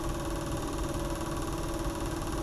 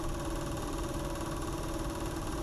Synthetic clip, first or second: second